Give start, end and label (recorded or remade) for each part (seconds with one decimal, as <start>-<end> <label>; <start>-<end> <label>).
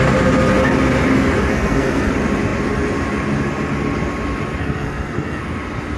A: 0.0-1.5 recorded; 1.5-2.1 remade; 2.1-4.6 recorded; 4.6-5.4 remade; 5.4-6.0 recorded